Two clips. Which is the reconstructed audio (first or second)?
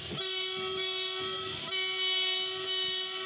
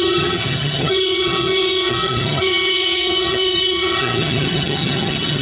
second